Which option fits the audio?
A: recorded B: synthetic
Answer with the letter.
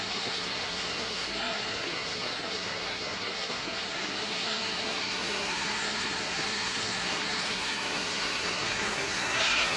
B